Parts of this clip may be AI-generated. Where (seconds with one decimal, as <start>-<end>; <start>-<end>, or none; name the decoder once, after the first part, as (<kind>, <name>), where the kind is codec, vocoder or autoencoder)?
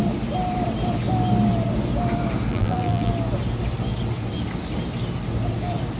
2.5-3.1 (vocoder, BigVGAN v2)